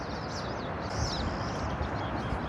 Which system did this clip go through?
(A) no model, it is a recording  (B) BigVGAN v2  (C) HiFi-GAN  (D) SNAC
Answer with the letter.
A